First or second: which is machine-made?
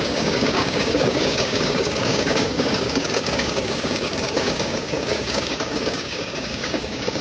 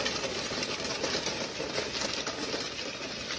first